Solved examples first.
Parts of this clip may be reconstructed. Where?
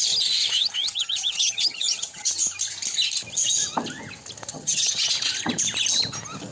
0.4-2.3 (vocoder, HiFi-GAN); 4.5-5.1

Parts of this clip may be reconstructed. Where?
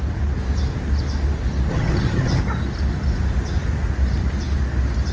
1.7-2.4 (vocoder, HiFi-GAN)